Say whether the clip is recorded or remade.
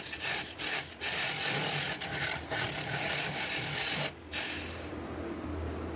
recorded